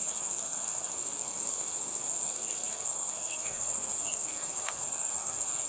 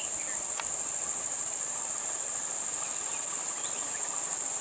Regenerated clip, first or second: first